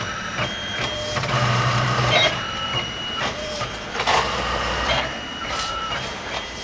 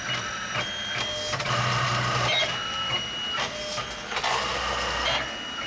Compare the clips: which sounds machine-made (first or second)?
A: first